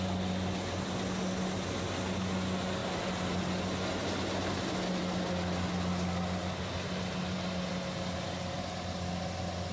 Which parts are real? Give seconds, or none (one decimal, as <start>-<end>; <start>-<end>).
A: 0.0-9.7